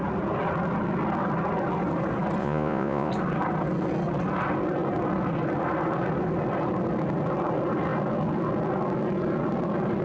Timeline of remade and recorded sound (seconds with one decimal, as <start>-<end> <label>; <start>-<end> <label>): 0.0-2.4 recorded; 2.4-3.1 remade; 3.1-10.0 recorded